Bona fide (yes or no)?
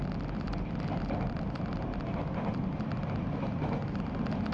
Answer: yes